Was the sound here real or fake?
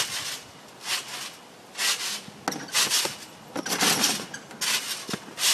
real